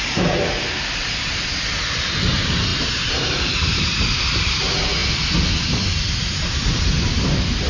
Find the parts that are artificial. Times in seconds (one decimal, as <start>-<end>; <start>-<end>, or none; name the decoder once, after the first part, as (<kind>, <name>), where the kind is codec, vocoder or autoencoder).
0.0-5.0 (vocoder, BigVGAN v2); 6.1-7.7